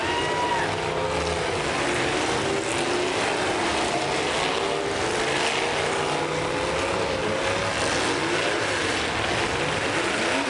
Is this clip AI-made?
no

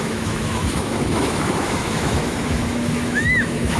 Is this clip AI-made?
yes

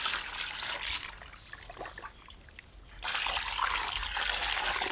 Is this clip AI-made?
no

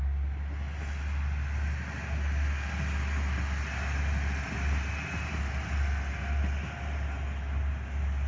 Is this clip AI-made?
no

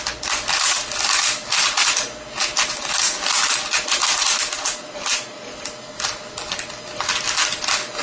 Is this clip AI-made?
no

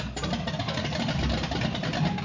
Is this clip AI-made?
yes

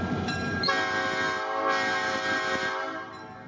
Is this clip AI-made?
no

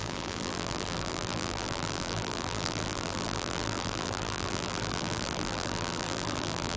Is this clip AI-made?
yes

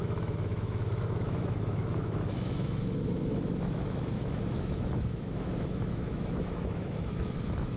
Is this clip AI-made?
yes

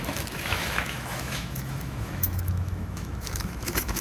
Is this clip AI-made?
yes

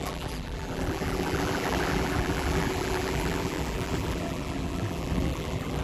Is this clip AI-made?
yes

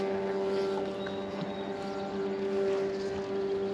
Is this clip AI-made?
no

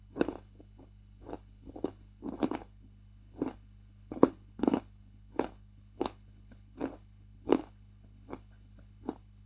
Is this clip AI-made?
yes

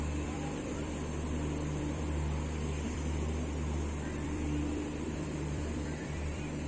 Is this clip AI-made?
yes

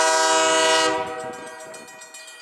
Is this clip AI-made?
no